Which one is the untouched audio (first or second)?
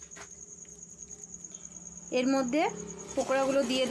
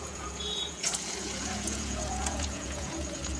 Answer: first